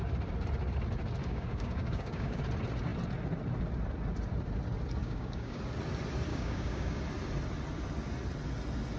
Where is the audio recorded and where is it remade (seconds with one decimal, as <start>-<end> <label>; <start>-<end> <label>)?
0.0-1.2 recorded; 1.2-2.4 remade; 2.4-5.0 recorded; 5.0-5.6 remade; 5.6-6.3 recorded; 6.3-7.0 remade; 7.0-9.0 recorded